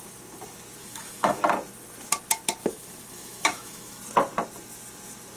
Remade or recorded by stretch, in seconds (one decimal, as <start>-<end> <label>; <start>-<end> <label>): 0.0-0.8 recorded; 0.8-1.4 remade; 1.4-2.6 recorded; 2.6-4.0 remade; 4.0-5.4 recorded